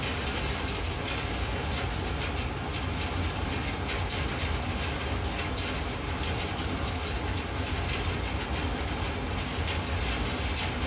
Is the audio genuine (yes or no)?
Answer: yes